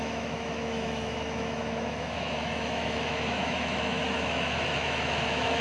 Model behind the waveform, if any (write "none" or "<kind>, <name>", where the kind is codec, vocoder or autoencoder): autoencoder, DAC-VAE